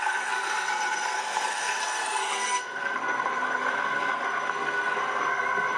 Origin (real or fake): fake